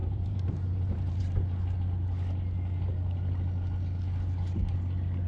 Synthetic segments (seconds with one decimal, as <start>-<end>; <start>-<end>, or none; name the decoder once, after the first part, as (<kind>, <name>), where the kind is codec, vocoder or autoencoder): 0.0-1.2 (vocoder, BigVGAN v2)